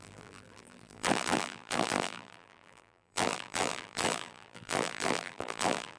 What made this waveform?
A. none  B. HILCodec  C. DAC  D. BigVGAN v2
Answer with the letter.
D